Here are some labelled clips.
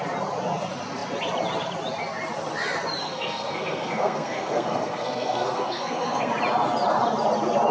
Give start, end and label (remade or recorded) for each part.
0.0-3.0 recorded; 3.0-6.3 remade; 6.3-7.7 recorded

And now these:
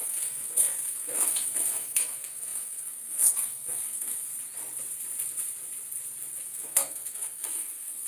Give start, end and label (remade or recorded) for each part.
0.0-4.3 remade; 4.3-6.4 recorded; 6.4-8.1 remade

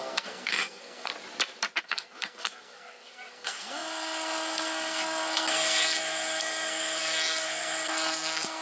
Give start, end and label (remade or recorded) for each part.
0.0-1.1 remade; 1.1-1.8 recorded; 1.8-8.6 remade

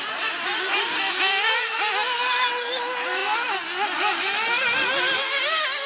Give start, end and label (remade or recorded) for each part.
0.0-5.9 recorded

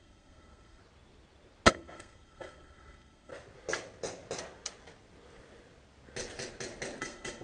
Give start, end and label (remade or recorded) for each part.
0.0-0.8 remade; 0.8-1.7 recorded; 1.7-3.3 remade; 3.3-7.0 recorded; 7.0-7.4 remade

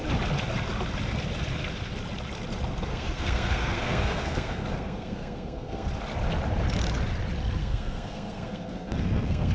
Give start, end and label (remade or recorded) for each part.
0.0-2.9 recorded; 2.9-5.9 remade; 5.9-7.6 recorded; 7.6-9.5 remade

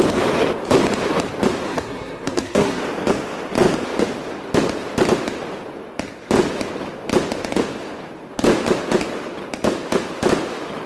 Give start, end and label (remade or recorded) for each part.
0.0-1.7 recorded; 1.7-2.8 remade; 2.8-10.9 recorded

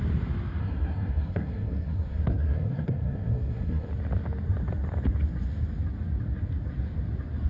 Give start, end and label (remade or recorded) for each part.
0.0-0.6 recorded; 0.6-3.9 remade; 3.9-7.5 recorded